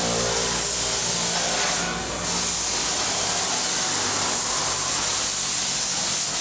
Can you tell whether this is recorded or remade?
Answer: recorded